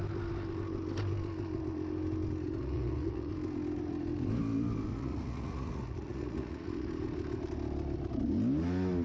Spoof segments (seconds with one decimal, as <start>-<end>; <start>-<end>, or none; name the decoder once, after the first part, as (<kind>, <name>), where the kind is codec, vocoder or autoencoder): 2.6-3.3 (vocoder, Vocos); 4.9-6.9